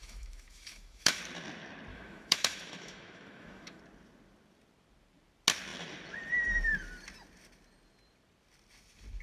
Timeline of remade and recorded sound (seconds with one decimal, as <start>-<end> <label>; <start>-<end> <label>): 0.0-1.2 remade; 1.2-1.9 recorded; 1.9-3.8 remade; 3.8-9.2 recorded